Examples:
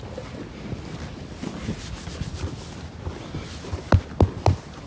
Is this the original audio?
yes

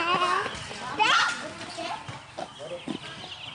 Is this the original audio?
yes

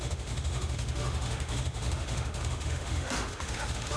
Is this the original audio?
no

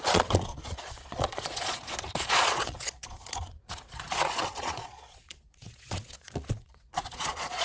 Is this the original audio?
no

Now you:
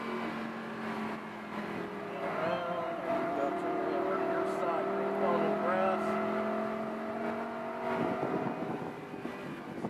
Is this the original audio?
yes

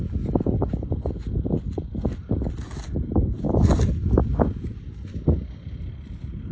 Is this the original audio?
yes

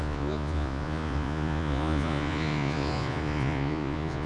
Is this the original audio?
no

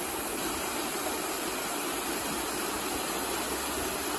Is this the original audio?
yes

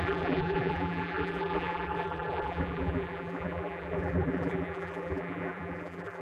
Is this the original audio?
no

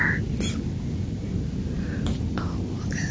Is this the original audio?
yes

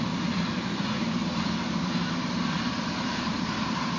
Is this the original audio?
no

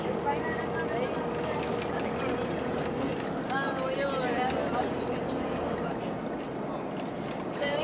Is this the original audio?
yes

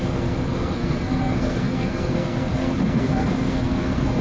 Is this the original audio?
no